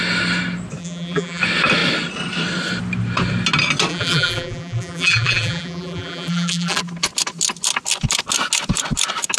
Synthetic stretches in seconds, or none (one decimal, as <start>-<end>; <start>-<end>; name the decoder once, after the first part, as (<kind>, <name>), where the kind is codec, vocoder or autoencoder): 0.8-1.4 (vocoder, BigVGAN v2); 3.9-6.8